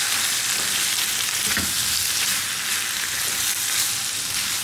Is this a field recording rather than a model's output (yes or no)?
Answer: yes